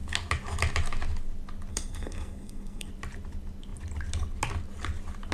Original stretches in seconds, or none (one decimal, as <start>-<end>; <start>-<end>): 0.0-1.7; 2.9-5.3